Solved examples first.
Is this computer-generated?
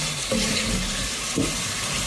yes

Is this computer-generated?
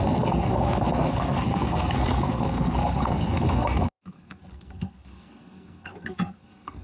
yes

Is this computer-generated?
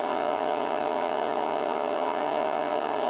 yes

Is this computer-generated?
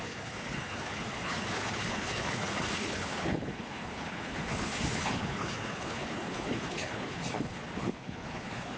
yes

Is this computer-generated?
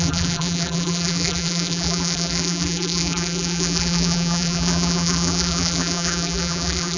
yes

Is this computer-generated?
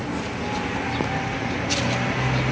no